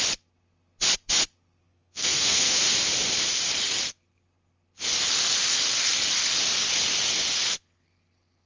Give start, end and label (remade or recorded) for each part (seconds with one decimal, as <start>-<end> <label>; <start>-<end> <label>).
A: 0.0-1.6 recorded; 1.6-2.7 remade; 2.7-8.5 recorded